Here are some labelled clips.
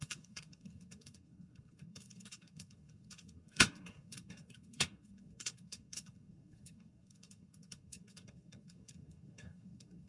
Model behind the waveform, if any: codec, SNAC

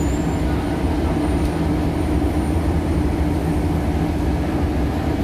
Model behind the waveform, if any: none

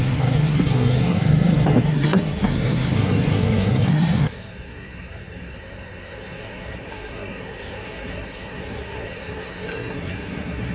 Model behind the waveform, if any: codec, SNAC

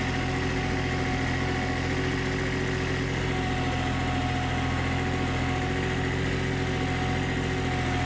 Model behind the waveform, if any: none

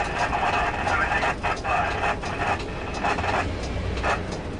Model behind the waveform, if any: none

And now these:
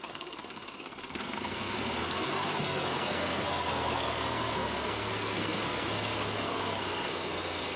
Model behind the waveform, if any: codec, SNAC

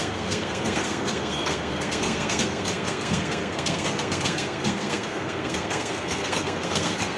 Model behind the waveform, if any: codec, SNAC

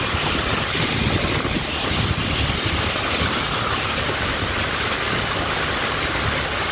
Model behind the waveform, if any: none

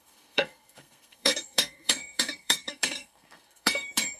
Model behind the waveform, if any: codec, SNAC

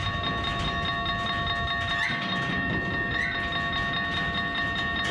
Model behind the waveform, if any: none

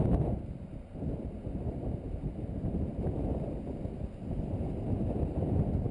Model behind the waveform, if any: none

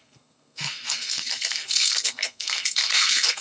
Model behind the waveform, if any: codec, SNAC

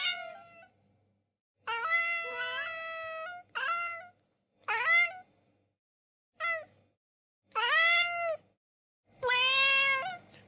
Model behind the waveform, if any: none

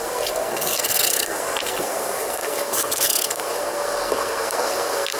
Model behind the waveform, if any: codec, SNAC